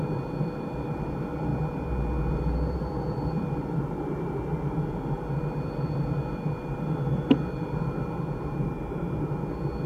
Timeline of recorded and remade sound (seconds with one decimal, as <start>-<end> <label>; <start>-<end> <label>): 0.0-1.5 remade; 1.5-2.3 recorded; 2.3-9.9 remade